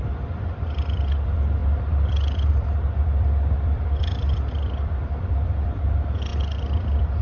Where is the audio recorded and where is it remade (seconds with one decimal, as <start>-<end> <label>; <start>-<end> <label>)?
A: 0.0-7.2 remade